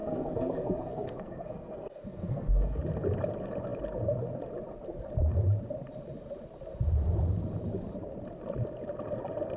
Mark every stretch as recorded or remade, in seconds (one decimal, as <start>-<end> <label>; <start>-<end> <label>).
0.0-2.8 remade; 2.8-9.6 recorded